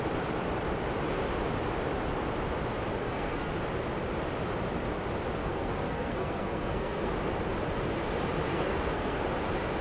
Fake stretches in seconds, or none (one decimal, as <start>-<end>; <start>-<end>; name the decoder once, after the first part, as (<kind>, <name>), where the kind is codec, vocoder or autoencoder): 3.0-3.5 (codec, SNAC); 5.4-7.1; 8.5-9.2